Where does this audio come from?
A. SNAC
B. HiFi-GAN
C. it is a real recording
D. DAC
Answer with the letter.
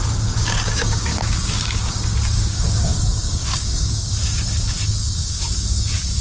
D